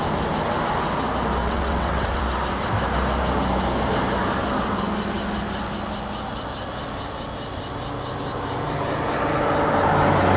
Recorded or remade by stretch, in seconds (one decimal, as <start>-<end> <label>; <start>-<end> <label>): 0.0-1.4 recorded; 1.4-2.2 remade; 2.2-10.4 recorded